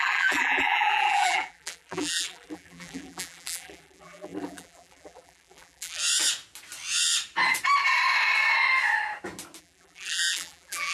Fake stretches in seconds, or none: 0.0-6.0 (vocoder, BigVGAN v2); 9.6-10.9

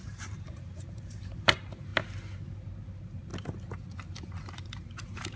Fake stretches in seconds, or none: 0.0-1.9 (vocoder, BigVGAN v2); 2.8-3.3; 4.2-5.4

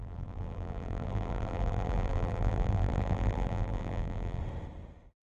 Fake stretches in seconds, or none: 0.0-4.4 (vocoder, BigVGAN v2)

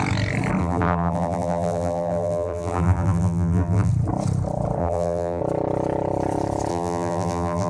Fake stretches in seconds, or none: 0.6-3.9 (vocoder, BigVGAN v2); 4.8-5.4; 6.7-7.7

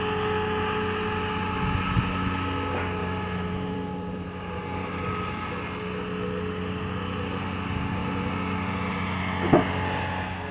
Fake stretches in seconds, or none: 3.0-5.1 (vocoder, BigVGAN v2)

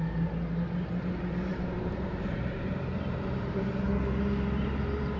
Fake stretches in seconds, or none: 1.5-3.7 (vocoder, BigVGAN v2)

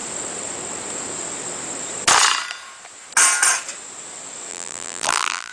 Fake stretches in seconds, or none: 4.5-5.5 (vocoder, BigVGAN v2)